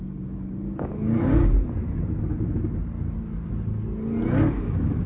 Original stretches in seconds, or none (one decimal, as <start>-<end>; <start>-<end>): 1.4-4.5